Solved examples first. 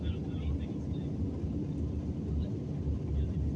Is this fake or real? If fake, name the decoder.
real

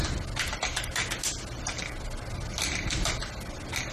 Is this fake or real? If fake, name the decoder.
real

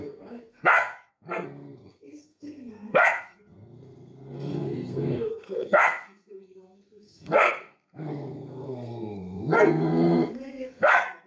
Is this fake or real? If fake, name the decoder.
fake, codec, SNAC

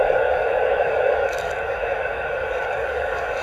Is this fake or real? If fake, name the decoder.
fake, codec, DAC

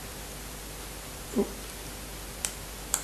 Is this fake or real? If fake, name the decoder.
fake, vocoder, BigVGAN v2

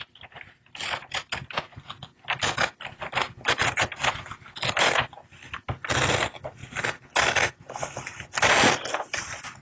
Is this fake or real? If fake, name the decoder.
real